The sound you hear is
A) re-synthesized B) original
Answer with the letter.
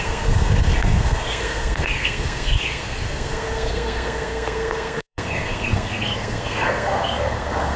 A